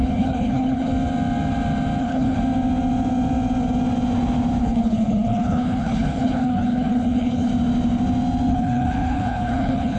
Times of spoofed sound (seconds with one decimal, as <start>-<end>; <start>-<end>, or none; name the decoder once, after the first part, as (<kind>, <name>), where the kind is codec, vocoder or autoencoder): 0.0-0.9 (codec, HILCodec); 2.0-2.4; 4.6-7.5; 8.5-10.0

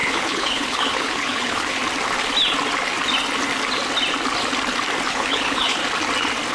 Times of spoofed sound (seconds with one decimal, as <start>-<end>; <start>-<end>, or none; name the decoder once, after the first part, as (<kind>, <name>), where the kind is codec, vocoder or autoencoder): 0.0-1.8 (codec, HILCodec); 5.1-5.8

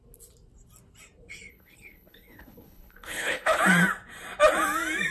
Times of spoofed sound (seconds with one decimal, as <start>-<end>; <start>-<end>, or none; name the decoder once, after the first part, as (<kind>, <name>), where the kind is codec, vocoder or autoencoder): 1.5-3.6 (codec, HILCodec)

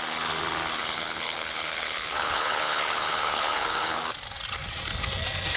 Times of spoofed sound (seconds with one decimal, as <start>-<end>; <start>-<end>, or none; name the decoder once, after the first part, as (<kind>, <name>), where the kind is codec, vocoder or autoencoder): 0.8-4.0 (codec, HILCodec)

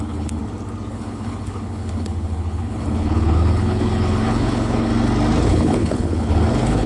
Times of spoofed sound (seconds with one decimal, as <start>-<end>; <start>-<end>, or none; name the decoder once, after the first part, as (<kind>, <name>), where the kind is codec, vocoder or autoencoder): 0.0-0.4 (codec, HILCodec); 0.9-4.9; 5.4-6.9

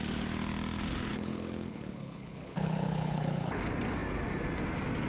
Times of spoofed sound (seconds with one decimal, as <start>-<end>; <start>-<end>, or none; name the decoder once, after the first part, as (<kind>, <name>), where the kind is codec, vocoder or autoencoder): 1.1-3.6 (codec, HILCodec)

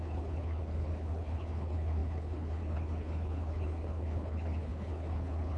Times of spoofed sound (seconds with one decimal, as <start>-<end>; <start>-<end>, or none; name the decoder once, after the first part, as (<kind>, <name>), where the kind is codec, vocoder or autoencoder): 0.0-5.6 (codec, HILCodec)